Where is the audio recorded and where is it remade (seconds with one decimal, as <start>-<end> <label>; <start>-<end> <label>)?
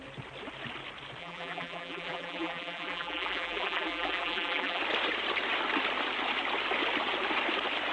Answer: 0.0-1.2 recorded; 1.2-4.8 remade; 4.8-7.9 recorded